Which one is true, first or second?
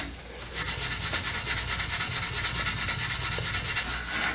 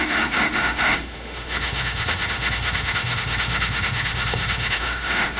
first